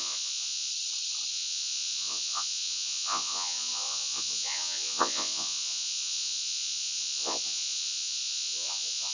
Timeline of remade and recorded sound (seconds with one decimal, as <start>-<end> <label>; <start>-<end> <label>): 0.0-0.7 remade; 0.7-1.3 recorded; 1.3-9.1 remade